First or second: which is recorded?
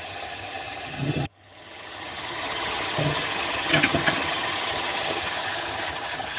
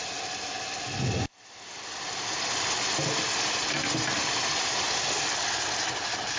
second